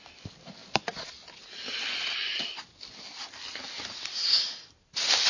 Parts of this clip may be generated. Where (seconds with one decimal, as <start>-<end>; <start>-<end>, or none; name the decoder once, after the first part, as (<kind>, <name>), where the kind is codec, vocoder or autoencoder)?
none